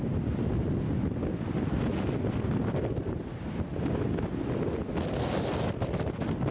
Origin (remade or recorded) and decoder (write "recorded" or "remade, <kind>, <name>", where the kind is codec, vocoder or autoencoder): recorded